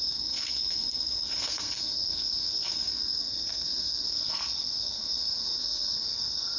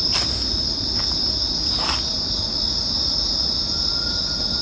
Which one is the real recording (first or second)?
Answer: second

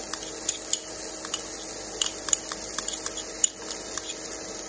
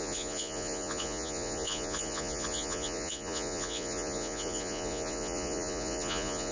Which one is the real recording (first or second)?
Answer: first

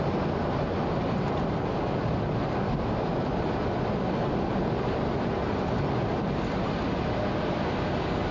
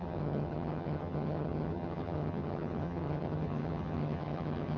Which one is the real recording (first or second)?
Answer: first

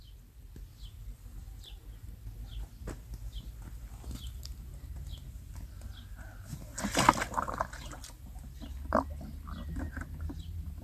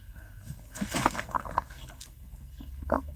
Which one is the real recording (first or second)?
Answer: first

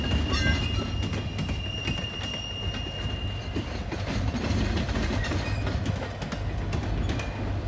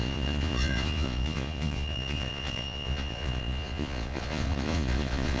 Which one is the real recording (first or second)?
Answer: first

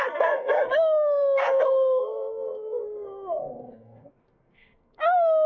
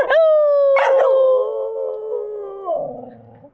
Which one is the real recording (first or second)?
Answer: second